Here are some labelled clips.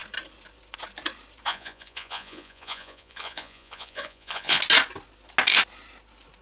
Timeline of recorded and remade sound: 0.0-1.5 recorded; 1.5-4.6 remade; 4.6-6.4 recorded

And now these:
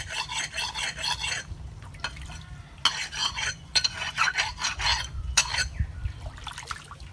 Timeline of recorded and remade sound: 0.0-3.2 recorded; 3.2-4.4 remade; 4.4-4.9 recorded; 4.9-5.5 remade; 5.5-7.1 recorded

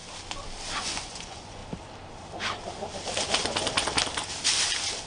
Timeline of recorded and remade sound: 0.0-0.8 recorded; 0.8-1.6 remade; 1.6-5.1 recorded

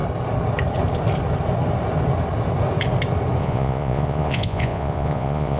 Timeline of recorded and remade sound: 0.0-3.4 recorded; 3.4-5.6 remade

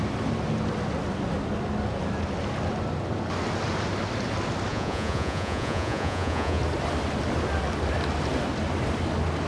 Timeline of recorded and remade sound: 0.0-4.7 recorded; 4.7-6.6 remade; 6.6-9.5 recorded

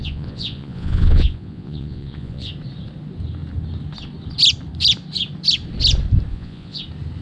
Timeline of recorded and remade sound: 0.0-2.5 remade; 2.5-6.3 recorded; 6.3-6.8 remade; 6.8-7.2 recorded

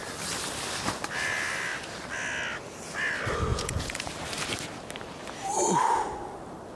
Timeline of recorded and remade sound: 0.0-3.5 recorded; 3.5-4.1 remade; 4.1-6.8 recorded